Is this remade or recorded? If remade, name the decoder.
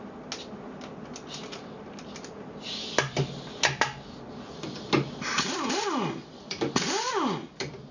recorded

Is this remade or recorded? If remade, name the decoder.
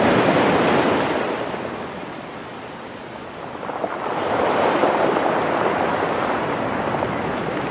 remade, vocoder, BigVGAN v2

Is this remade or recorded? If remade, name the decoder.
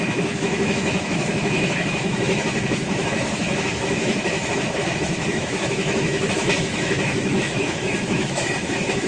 remade, autoencoder, DAC-VAE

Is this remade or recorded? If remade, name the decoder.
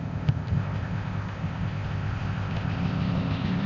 remade, codec, ZipCodec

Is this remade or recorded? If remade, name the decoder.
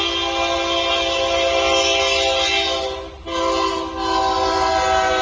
recorded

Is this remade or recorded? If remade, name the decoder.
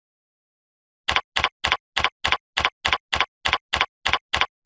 recorded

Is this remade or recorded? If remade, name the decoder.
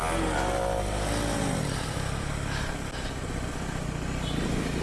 recorded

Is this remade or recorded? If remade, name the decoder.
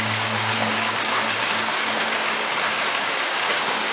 remade, codec, DAC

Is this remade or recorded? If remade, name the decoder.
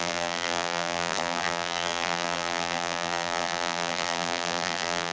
remade, vocoder, BigVGAN v2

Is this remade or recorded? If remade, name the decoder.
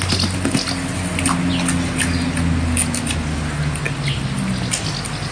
recorded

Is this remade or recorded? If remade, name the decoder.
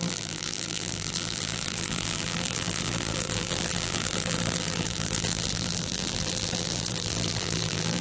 remade, vocoder, BigVGAN v2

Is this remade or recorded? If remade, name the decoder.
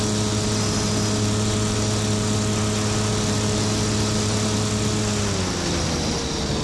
recorded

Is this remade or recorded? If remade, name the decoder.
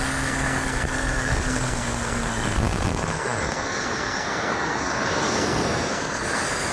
remade, codec, SNAC